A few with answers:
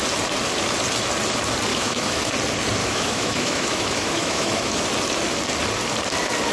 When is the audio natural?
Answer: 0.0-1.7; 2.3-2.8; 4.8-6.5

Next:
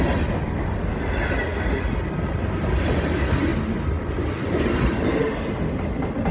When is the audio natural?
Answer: 0.0-6.3

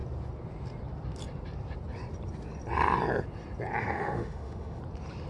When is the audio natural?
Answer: 0.0-3.8; 4.8-5.3

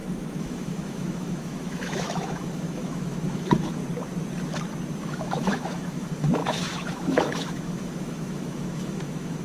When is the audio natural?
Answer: 3.8-5.0